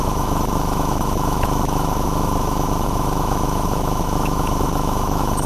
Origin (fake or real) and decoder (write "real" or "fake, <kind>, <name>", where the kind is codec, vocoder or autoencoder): fake, autoencoder, DAC-VAE